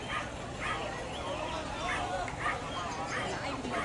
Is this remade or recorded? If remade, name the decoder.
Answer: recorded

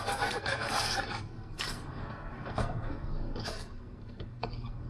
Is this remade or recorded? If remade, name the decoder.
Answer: remade, codec, SNAC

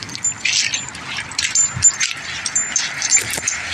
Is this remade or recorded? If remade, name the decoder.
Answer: recorded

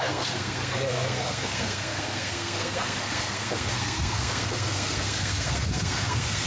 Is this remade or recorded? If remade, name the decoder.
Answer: remade, codec, SNAC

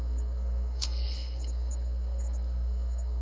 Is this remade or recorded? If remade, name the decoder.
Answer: remade, codec, SNAC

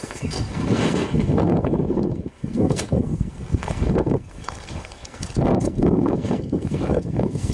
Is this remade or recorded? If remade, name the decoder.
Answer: remade, codec, SNAC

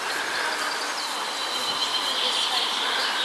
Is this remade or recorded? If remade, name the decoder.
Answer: recorded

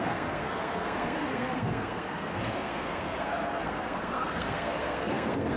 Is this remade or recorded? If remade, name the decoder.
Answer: remade, codec, SNAC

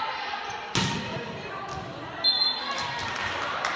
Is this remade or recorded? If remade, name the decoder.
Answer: recorded